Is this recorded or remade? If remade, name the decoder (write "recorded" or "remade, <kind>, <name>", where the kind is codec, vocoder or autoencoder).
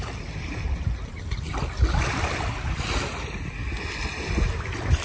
recorded